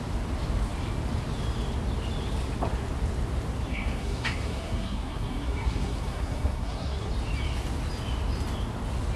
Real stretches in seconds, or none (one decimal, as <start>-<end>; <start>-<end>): 0.0-3.7; 7.1-9.2